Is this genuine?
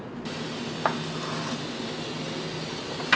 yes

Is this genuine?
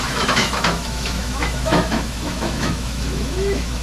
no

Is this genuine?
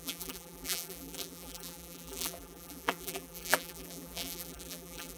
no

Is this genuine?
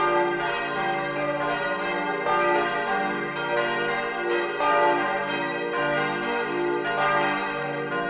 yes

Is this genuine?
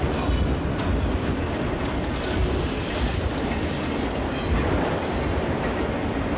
yes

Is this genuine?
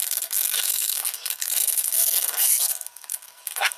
no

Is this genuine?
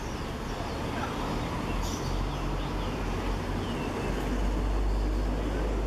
yes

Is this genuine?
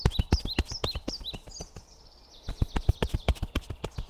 yes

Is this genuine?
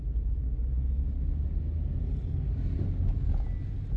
yes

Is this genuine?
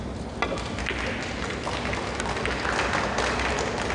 yes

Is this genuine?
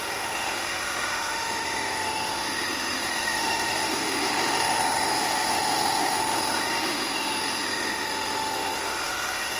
no